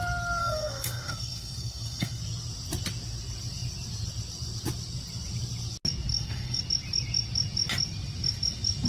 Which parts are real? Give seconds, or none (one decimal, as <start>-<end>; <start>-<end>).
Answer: 0.0-0.4; 2.2-6.1; 6.6-8.9